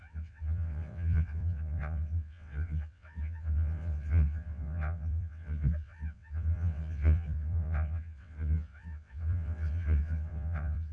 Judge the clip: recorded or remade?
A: remade